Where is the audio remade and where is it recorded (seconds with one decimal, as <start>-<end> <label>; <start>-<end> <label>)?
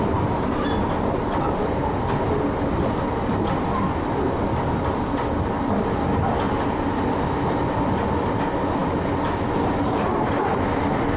0.0-11.2 remade